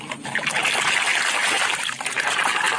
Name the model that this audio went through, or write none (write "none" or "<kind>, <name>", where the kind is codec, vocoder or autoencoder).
none